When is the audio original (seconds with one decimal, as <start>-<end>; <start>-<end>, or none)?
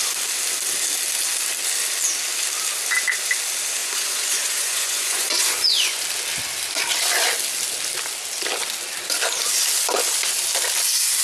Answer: 0.0-3.8; 6.0-11.2